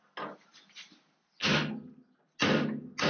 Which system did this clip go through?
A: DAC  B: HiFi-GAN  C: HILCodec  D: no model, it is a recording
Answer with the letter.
D